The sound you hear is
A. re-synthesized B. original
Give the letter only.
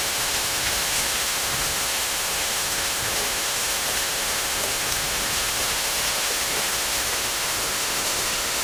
A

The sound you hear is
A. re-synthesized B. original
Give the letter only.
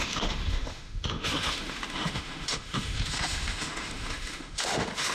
A